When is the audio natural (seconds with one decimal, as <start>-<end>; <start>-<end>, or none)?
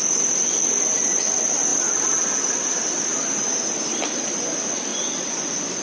0.0-4.9